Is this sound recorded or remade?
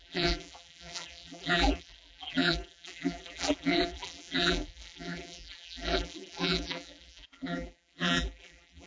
remade